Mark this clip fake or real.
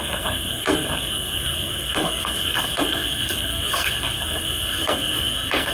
fake